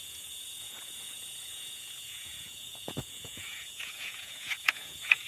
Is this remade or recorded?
remade